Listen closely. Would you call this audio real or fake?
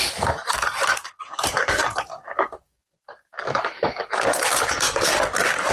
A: fake